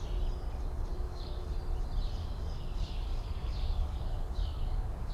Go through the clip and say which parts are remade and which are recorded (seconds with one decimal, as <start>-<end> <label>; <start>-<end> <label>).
0.0-0.9 recorded; 0.9-1.4 remade; 1.4-2.2 recorded; 2.2-5.1 remade